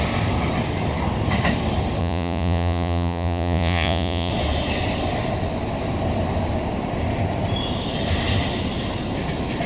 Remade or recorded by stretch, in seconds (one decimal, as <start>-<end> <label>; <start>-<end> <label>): 0.0-2.0 recorded; 2.0-4.3 remade; 4.3-9.7 recorded